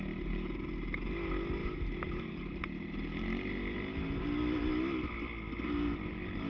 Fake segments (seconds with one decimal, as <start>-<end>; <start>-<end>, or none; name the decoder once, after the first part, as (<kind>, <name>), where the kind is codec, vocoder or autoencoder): none